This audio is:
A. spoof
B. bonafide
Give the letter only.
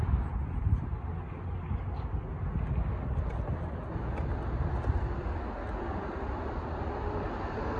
B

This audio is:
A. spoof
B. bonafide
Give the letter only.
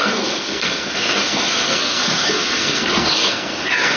A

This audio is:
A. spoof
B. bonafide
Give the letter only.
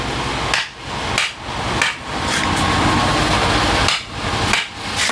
B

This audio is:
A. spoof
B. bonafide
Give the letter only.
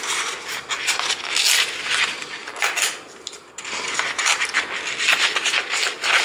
B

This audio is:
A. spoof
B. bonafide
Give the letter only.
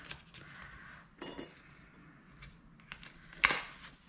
B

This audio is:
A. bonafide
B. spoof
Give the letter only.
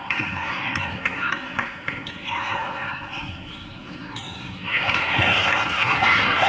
B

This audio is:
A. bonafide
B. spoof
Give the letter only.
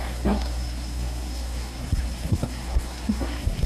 B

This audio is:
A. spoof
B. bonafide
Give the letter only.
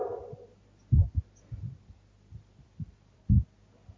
B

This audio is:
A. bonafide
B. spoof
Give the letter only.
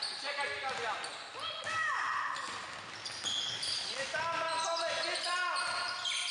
A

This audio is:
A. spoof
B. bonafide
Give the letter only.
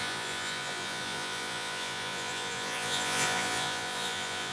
A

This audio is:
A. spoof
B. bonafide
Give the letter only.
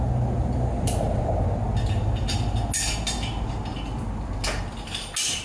B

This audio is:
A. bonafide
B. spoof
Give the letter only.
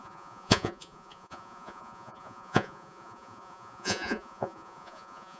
B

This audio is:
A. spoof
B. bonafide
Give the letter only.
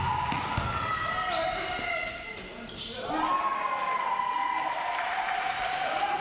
B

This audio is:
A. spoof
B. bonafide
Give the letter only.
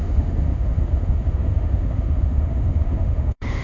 A